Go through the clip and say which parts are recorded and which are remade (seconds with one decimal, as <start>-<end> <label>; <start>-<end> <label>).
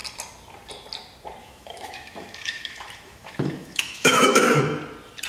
0.0-1.4 recorded; 1.4-4.6 remade; 4.6-5.3 recorded